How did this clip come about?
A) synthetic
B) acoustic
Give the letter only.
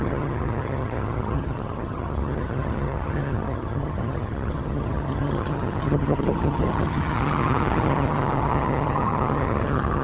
A